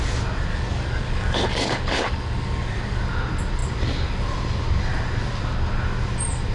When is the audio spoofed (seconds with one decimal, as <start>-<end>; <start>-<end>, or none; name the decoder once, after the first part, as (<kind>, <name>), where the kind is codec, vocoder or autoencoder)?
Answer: 0.5-3.0 (codec, DAC)